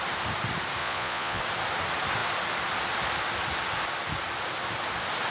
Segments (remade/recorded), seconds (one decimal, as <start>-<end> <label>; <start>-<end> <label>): 0.0-0.8 recorded; 0.8-1.4 remade; 1.4-5.3 recorded